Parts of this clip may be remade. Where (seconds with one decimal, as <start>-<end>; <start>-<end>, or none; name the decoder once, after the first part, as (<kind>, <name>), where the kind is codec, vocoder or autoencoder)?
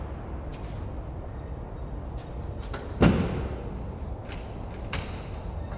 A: none